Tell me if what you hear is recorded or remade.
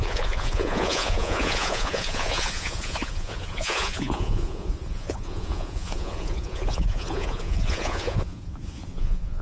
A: remade